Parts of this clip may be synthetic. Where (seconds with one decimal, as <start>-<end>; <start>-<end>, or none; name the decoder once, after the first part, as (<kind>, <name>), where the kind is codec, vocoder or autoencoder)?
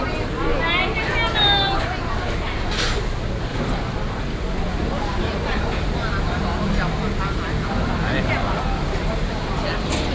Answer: 3.5-4.1 (vocoder, BigVGAN v2); 4.8-6.4